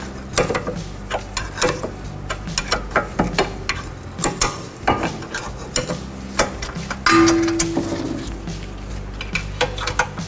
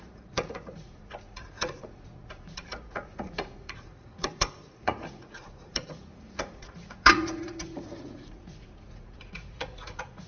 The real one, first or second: first